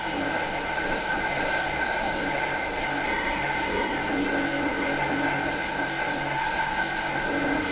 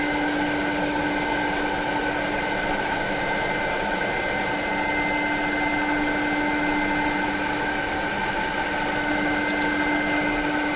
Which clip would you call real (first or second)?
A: second